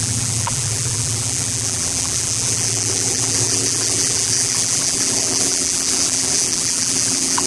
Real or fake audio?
fake